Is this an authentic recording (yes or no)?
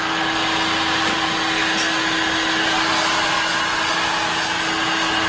yes